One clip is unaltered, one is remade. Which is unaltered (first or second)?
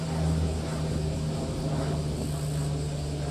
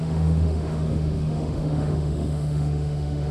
first